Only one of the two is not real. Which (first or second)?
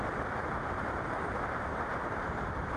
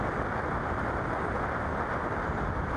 first